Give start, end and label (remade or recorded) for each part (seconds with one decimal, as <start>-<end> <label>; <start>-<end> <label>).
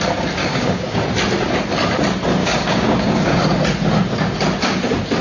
0.0-0.4 recorded; 0.4-1.0 remade; 1.0-2.4 recorded; 2.4-3.4 remade; 3.4-5.2 recorded